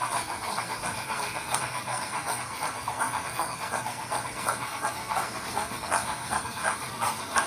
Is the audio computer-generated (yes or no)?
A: yes